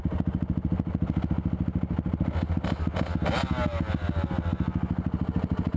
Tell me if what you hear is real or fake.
real